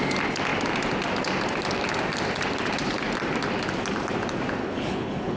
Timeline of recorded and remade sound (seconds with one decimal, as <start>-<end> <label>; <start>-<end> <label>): 0.0-4.6 recorded; 4.6-5.4 remade